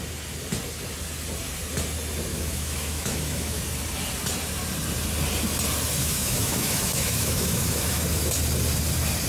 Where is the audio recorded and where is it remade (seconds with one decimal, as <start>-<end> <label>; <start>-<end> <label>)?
0.0-2.3 recorded; 2.3-3.6 remade; 3.6-6.0 recorded; 6.0-8.0 remade; 8.0-9.3 recorded